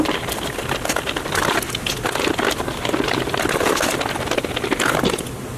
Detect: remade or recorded remade